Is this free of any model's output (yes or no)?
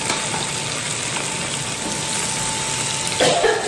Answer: yes